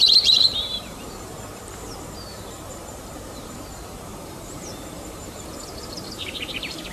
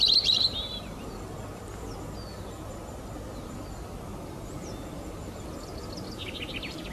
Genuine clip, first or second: second